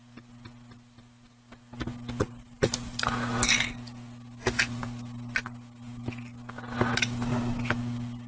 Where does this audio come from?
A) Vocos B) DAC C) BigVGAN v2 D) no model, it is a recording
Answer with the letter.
D